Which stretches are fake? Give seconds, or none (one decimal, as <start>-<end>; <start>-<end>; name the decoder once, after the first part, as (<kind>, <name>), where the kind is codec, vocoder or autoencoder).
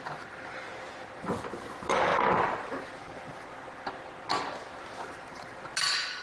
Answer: none